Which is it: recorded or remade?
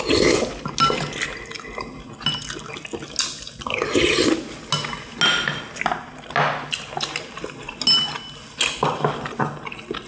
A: recorded